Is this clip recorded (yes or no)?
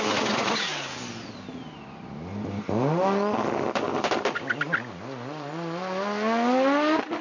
yes